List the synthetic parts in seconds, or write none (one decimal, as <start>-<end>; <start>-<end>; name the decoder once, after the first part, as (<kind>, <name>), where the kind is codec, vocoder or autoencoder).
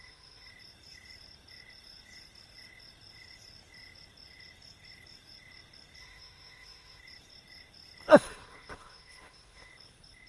0.0-0.5 (autoencoder, DAC-VAE); 6.0-7.0; 8.1-9.7